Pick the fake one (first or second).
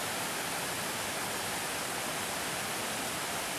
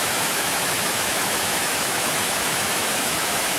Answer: second